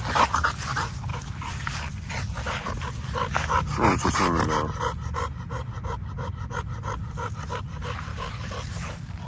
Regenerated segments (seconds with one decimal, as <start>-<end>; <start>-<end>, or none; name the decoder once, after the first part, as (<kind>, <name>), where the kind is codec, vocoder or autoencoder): 1.1-4.8 (vocoder, BigVGAN v2); 8.1-8.7